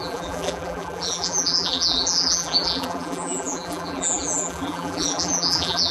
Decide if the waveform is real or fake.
fake